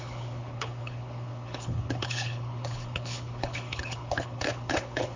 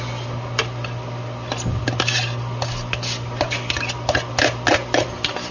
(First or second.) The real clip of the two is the second